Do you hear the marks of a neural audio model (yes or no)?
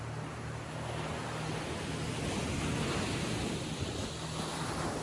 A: no